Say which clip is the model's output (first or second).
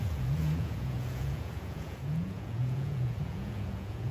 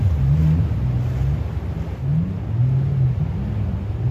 first